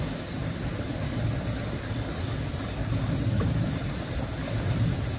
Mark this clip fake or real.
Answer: real